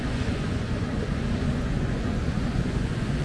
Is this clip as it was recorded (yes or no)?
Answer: no